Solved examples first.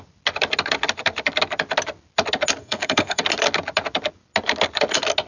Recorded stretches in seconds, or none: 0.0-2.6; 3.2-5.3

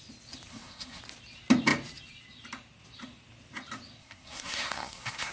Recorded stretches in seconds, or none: 0.0-0.5; 1.0-4.0

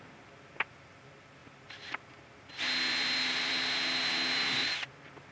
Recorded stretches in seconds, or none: 0.0-5.3

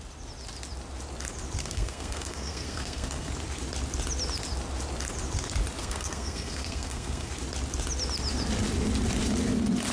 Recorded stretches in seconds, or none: 0.0-1.6; 3.3-5.8; 7.3-9.9

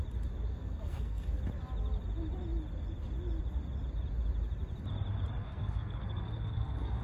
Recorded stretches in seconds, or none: 0.0-0.5; 1.4-5.4

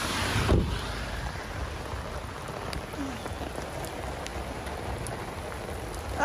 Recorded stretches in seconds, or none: 0.0-6.2

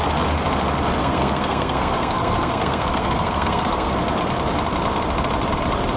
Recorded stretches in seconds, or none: 0.0-1.0; 3.9-6.0